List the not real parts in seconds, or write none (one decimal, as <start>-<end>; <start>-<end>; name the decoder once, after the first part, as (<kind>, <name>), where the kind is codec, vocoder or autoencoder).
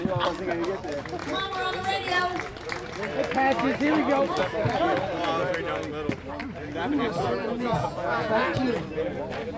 1.2-2.2 (vocoder, Vocos); 7.4-8.3